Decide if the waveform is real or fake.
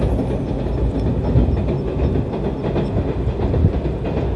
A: real